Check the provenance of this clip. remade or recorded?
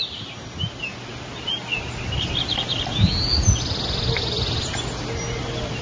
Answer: recorded